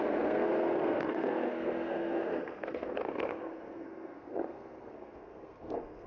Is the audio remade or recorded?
remade